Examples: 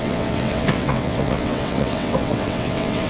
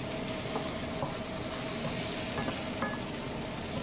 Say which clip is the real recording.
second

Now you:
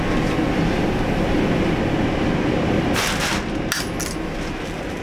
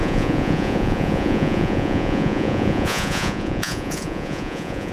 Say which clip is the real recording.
first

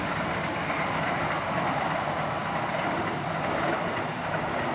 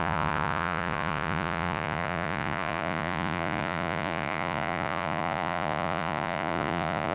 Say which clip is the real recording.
first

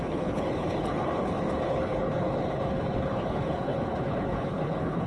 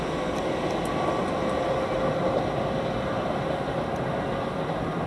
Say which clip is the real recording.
second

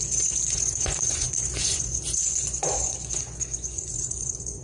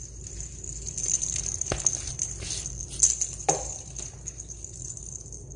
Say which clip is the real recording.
second